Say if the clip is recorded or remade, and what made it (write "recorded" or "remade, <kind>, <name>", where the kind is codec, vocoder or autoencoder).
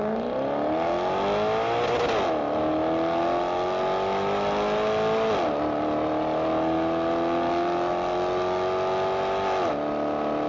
recorded